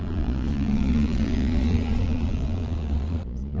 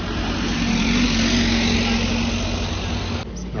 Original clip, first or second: second